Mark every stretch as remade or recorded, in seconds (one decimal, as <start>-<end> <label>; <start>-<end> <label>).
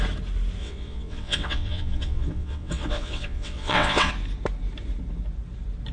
0.0-0.6 recorded; 0.6-4.1 remade; 4.1-5.9 recorded